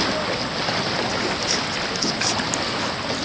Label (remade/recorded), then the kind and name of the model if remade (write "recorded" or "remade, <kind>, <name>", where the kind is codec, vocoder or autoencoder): recorded